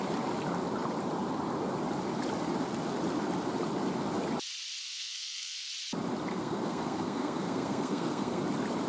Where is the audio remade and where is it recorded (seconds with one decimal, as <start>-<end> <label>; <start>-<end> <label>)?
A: 0.0-4.8 recorded; 4.8-5.7 remade; 5.7-6.3 recorded; 6.3-8.4 remade; 8.4-8.9 recorded